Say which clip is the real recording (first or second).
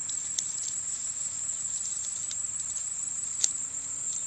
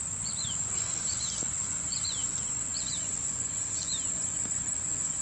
first